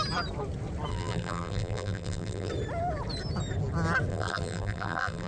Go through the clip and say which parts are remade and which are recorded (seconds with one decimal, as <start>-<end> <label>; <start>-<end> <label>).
0.0-0.9 recorded; 0.9-2.5 remade; 2.5-4.1 recorded; 4.1-5.3 remade